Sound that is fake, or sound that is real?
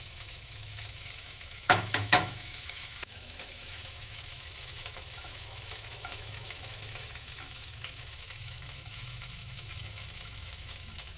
fake